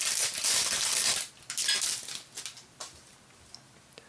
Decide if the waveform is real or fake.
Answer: real